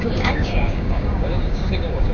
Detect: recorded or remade remade